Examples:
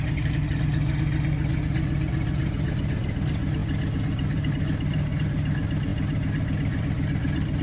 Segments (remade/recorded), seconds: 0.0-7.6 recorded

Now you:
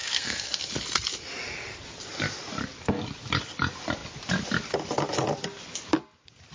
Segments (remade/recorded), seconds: 0.0-0.7 remade; 0.7-6.5 recorded

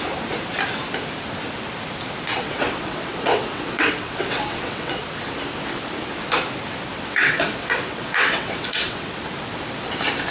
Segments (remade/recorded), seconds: 0.0-2.3 recorded; 2.3-4.9 remade; 4.9-6.9 recorded; 6.9-9.2 remade; 9.2-10.3 recorded

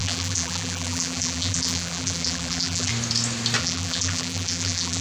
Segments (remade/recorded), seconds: 0.0-2.9 remade; 2.9-3.6 recorded; 3.6-5.0 remade

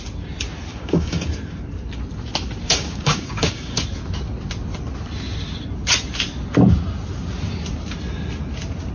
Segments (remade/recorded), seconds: 0.0-0.7 recorded; 0.7-1.3 remade; 1.3-2.6 recorded; 2.6-3.8 remade; 3.8-8.9 recorded

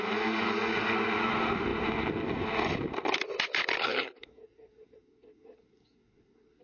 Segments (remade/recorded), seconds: 0.0-3.8 recorded; 3.8-6.6 remade

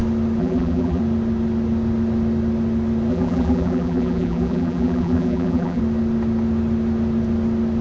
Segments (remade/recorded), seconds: 0.0-0.4 recorded; 0.4-1.0 remade; 1.0-3.1 recorded; 3.1-5.8 remade; 5.8-7.8 recorded